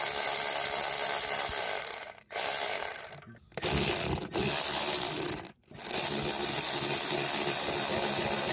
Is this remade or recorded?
recorded